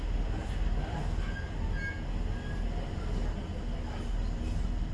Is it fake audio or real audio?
real